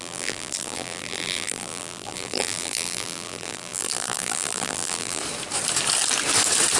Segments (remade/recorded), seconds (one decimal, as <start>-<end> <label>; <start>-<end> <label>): 0.0-5.2 remade; 5.2-6.8 recorded